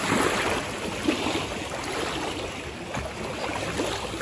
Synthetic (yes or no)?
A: no